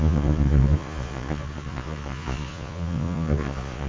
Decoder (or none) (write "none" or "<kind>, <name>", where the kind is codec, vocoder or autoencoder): vocoder, Vocos